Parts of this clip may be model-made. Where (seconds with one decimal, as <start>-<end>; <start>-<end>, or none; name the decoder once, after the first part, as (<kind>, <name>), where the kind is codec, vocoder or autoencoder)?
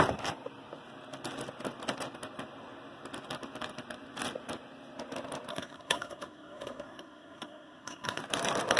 5.5-8.2 (codec, SNAC)